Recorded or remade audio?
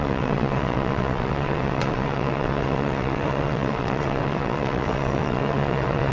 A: remade